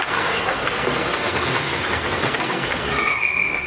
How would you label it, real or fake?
fake